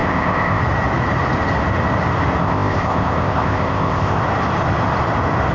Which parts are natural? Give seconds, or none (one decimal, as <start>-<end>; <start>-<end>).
0.6-2.4; 4.2-5.5

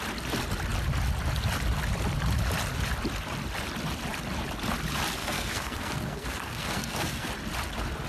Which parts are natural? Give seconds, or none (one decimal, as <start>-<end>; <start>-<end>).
0.0-5.2; 7.3-8.1

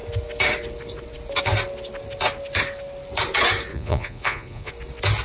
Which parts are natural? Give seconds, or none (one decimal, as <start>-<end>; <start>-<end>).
0.0-3.7; 4.7-5.2

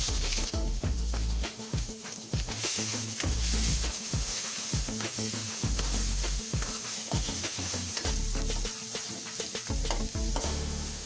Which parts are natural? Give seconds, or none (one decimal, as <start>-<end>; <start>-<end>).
8.0-10.4

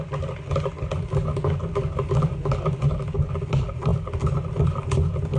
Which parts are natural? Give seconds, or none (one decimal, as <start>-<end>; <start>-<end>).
0.0-5.4

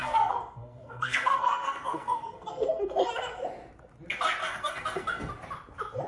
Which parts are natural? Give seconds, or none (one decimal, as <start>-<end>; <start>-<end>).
3.1-4.4; 5.3-6.1

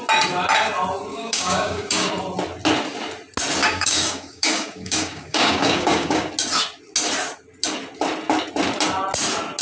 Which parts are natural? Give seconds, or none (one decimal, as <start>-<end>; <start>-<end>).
0.0-1.1; 2.1-3.6; 6.3-9.6